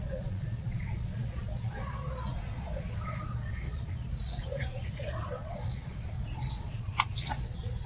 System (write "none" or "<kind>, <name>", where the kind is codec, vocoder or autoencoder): vocoder, Vocos